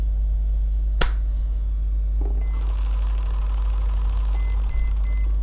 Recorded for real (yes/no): yes